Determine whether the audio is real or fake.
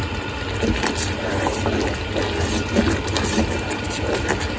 real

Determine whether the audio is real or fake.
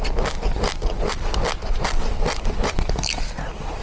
real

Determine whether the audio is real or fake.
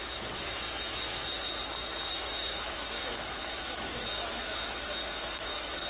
fake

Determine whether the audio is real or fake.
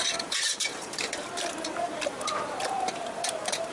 fake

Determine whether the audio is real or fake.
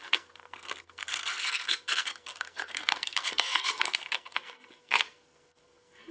fake